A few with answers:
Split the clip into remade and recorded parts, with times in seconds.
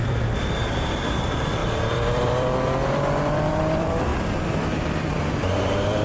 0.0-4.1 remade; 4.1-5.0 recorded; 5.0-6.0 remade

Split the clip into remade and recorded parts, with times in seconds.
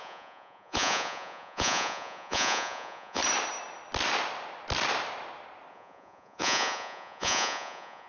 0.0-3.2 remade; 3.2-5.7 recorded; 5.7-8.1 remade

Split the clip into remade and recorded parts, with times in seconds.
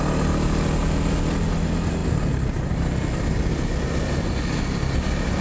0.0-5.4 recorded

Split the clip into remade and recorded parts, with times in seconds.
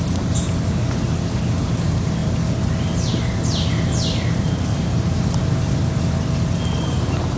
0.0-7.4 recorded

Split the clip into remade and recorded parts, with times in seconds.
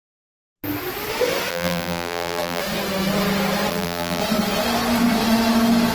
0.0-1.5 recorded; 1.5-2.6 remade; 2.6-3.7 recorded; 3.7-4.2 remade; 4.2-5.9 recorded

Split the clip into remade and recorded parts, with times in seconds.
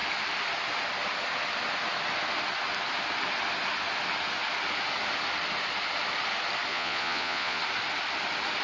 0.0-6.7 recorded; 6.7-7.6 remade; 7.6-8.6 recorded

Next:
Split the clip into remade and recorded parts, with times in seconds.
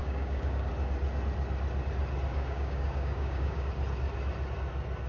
0.0-0.7 remade; 0.7-2.3 recorded; 2.3-3.7 remade; 3.7-5.1 recorded